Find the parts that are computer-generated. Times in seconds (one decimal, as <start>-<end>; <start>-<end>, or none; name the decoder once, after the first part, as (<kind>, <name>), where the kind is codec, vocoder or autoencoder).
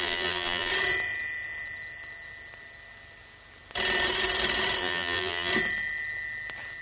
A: 0.0-0.7 (vocoder, BigVGAN v2); 4.8-5.5